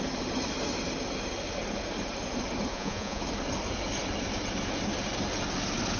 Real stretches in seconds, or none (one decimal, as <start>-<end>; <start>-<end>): 0.0-2.7; 3.2-6.0